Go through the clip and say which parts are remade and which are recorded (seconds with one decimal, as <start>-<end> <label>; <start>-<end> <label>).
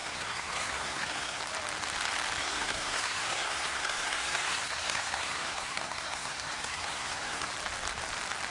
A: 0.0-1.4 remade; 1.4-2.4 recorded; 2.4-7.5 remade; 7.5-8.5 recorded